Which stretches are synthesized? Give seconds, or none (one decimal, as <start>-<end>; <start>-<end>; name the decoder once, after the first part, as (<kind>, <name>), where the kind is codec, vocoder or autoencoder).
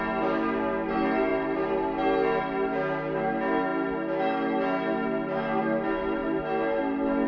none